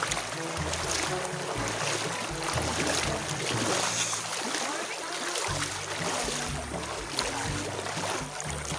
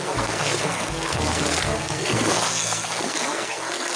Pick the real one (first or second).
first